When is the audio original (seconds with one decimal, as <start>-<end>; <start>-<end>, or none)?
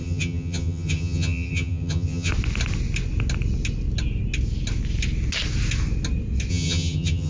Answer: 2.3-6.5